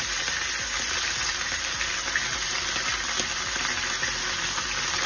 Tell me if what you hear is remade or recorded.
recorded